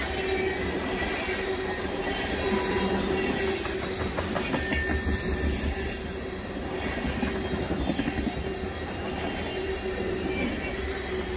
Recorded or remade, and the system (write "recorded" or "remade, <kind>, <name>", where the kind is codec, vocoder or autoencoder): recorded